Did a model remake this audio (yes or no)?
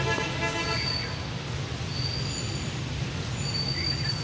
no